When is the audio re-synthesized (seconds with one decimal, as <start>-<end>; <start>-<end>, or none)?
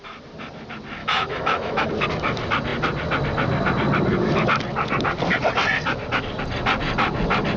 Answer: 1.0-1.9